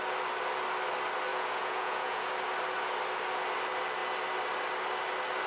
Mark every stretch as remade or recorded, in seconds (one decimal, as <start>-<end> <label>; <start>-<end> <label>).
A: 0.0-1.3 recorded; 1.3-2.3 remade; 2.3-5.5 recorded